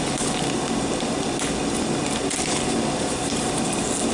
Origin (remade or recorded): recorded